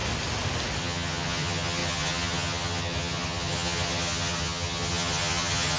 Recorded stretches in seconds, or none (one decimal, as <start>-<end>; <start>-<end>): 0.0-0.8